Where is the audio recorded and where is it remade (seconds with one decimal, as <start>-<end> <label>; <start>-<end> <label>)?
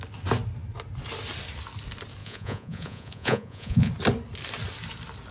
0.0-2.2 recorded; 2.2-3.9 remade; 3.9-5.3 recorded